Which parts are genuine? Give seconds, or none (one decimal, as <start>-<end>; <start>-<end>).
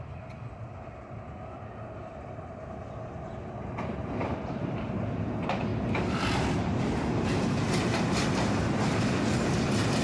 0.0-5.7; 6.2-10.0